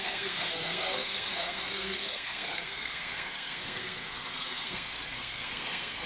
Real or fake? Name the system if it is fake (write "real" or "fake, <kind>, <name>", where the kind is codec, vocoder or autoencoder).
fake, codec, SNAC